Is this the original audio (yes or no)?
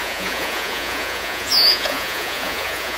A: no